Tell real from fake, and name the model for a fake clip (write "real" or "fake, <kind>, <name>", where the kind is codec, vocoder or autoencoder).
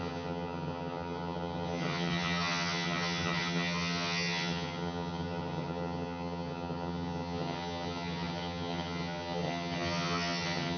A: fake, vocoder, HiFi-GAN